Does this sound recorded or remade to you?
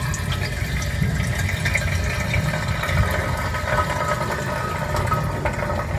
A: recorded